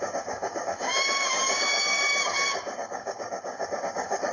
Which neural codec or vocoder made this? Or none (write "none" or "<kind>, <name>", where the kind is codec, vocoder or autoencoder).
codec, DAC